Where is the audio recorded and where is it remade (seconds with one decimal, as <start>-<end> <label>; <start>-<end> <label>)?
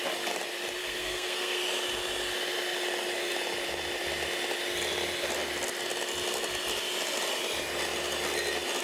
0.0-0.8 recorded; 0.8-1.6 remade; 1.6-8.8 recorded